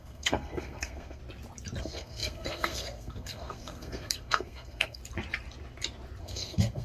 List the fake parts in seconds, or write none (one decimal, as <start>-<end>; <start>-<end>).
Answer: 0.0-1.2; 1.8-5.0; 6.2-6.8